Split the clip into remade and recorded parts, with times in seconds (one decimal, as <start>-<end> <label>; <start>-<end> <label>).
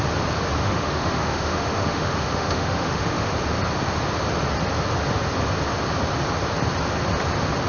0.0-0.6 recorded; 0.6-3.3 remade; 3.3-7.7 recorded